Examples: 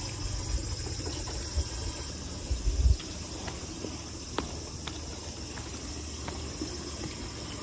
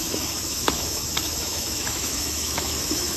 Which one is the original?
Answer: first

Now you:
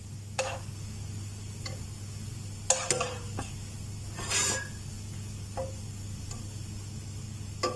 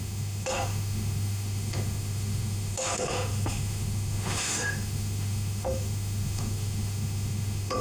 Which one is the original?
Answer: first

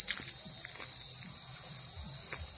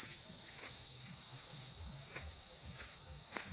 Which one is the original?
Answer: first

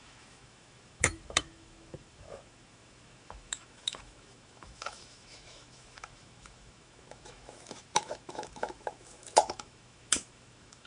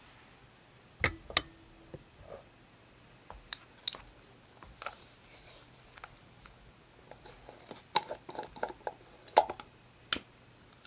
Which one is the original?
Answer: second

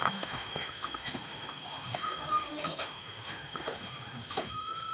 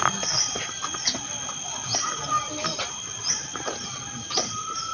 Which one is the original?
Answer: second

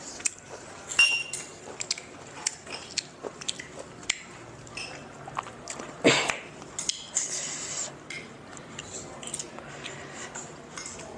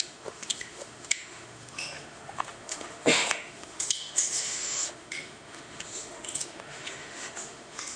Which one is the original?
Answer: first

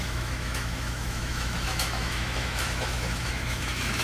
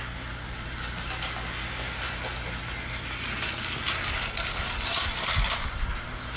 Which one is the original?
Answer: second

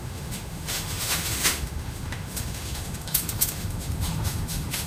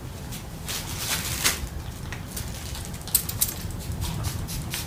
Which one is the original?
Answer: second